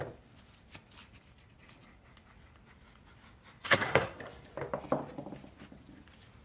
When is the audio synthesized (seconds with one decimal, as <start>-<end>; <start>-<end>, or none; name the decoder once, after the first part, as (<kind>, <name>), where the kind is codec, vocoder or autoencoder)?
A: 3.6-4.2 (codec, SNAC)